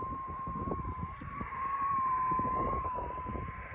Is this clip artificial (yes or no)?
yes